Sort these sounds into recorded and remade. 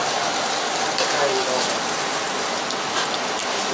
recorded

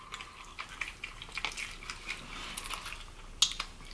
recorded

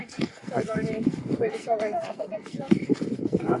remade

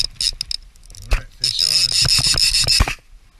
recorded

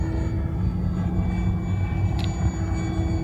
recorded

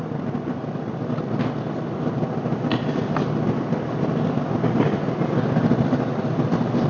recorded